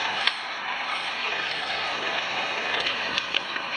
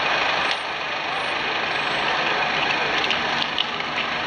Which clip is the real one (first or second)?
second